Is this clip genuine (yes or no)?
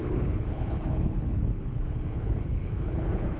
no